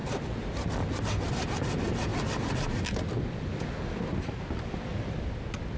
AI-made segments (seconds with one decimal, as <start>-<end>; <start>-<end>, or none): none